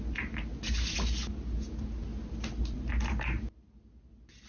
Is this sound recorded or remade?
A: recorded